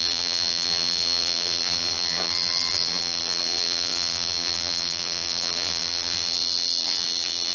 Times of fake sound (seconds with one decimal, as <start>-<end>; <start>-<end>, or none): 0.0-7.5

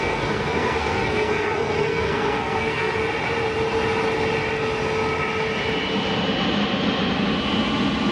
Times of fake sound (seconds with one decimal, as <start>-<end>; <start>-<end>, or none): 0.0-3.0

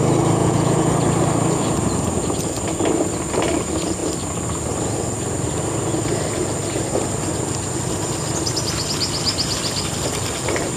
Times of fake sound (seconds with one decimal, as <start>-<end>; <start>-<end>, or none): 0.4-1.0

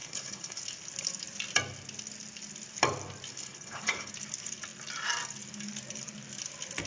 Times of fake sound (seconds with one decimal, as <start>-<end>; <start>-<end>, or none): 0.0-0.6; 3.3-4.1

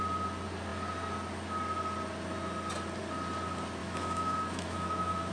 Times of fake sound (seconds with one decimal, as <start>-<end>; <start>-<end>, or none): 3.8-5.3

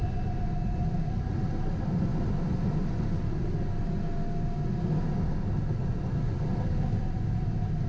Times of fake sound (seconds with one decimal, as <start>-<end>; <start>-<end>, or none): none

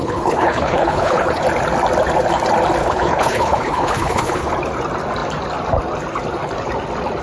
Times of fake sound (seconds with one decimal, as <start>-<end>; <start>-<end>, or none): 0.0-1.4; 2.8-4.5